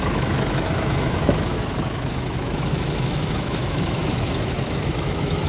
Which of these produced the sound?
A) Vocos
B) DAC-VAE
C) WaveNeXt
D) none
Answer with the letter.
B